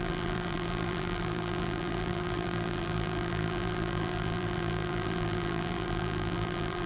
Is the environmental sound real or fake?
fake